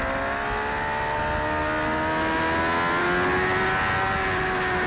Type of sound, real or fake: real